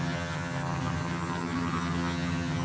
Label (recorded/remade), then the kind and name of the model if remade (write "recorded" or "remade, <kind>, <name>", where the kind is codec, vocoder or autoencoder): remade, vocoder, HiFi-GAN